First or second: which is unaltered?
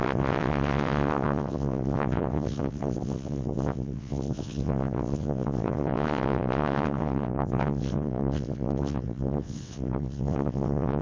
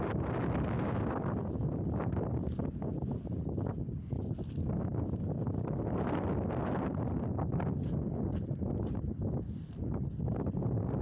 second